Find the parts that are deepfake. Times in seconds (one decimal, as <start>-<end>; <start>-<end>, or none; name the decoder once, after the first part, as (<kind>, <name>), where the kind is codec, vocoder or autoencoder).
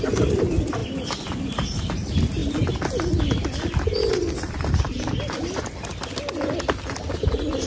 none